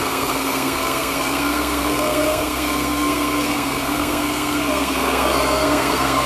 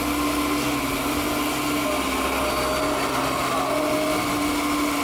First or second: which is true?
second